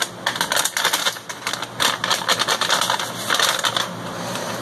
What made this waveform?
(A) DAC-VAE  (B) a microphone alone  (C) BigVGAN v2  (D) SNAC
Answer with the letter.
B